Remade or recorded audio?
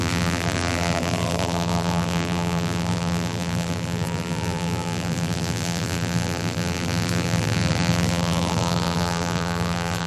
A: remade